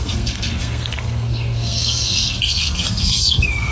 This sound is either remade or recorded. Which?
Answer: remade